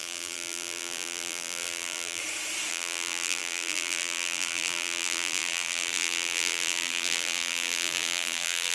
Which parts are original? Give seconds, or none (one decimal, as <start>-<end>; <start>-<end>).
2.2-2.7